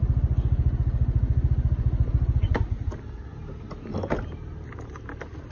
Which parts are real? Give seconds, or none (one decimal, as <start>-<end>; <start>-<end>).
0.0-5.5